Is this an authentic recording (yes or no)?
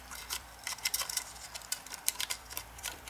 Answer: no